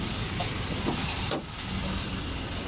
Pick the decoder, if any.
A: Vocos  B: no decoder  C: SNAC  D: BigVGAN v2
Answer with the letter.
B